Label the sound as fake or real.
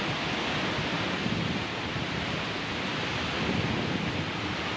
real